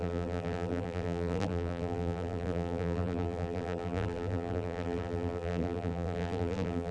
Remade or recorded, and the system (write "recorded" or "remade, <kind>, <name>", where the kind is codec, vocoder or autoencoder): remade, vocoder, BigVGAN v2